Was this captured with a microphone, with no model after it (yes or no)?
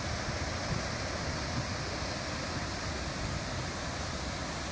yes